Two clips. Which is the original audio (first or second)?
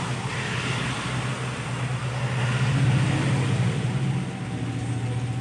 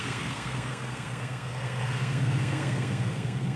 first